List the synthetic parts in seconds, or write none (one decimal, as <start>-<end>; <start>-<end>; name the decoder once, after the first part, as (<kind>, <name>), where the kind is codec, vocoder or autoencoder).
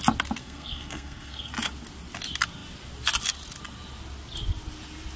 0.4-1.5 (codec, SNAC)